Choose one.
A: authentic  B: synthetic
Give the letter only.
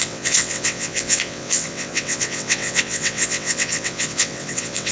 B